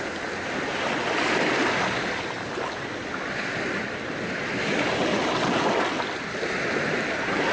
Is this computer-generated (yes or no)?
no